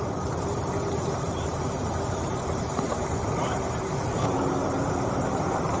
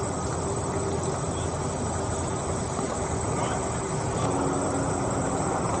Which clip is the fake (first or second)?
first